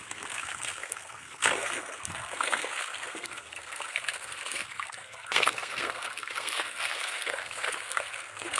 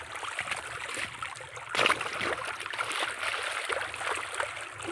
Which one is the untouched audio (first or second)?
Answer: second